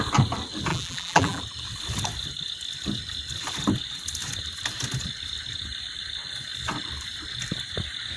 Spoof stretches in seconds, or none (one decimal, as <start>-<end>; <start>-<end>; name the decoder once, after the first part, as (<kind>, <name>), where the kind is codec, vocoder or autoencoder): 0.7-1.4 (vocoder, BigVGAN v2)